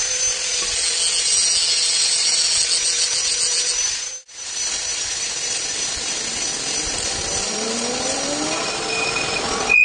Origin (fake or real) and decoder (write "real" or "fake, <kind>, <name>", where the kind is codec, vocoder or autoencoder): real